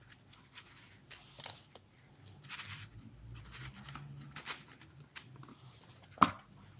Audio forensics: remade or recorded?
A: recorded